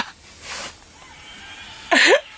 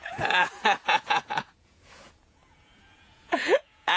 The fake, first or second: second